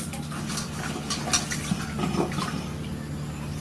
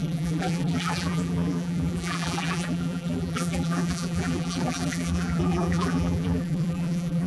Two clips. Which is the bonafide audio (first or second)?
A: first